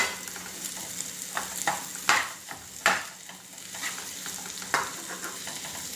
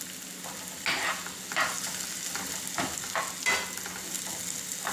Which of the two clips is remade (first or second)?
first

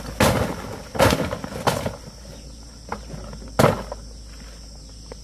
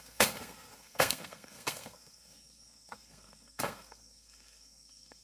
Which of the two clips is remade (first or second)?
second